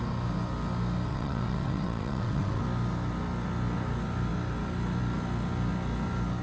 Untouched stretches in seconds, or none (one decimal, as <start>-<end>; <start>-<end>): 0.0-1.1; 2.6-6.4